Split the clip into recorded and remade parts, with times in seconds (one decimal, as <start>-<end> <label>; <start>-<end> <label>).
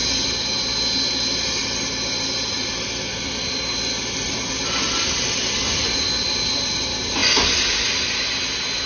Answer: 0.0-8.9 recorded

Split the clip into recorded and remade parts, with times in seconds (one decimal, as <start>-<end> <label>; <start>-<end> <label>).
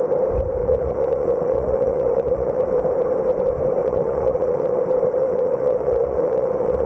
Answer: 0.0-0.6 recorded; 0.6-2.6 remade; 2.6-3.8 recorded; 3.8-4.8 remade; 4.8-5.2 recorded; 5.2-6.9 remade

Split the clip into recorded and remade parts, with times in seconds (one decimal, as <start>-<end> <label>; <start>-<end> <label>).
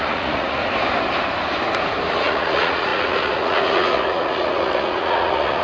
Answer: 0.0-0.6 remade; 0.6-2.1 recorded; 2.1-5.6 remade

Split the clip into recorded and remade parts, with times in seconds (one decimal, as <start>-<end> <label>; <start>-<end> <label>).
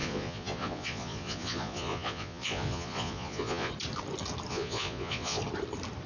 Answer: 0.0-3.7 remade; 3.7-4.5 recorded; 4.5-5.4 remade; 5.4-6.1 recorded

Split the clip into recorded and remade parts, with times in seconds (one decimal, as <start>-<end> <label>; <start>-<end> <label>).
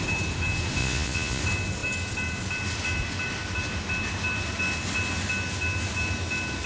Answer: 0.0-0.8 recorded; 0.8-1.4 remade; 1.4-6.7 recorded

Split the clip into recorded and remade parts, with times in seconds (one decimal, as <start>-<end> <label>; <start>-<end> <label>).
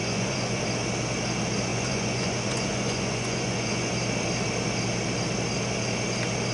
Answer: 0.0-0.6 remade; 0.6-1.7 recorded; 1.7-3.9 remade; 3.9-6.5 recorded